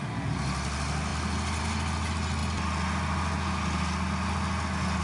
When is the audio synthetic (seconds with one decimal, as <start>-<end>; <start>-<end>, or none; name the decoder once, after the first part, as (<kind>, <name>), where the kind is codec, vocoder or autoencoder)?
none